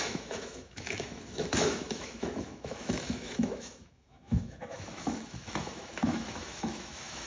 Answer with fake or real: fake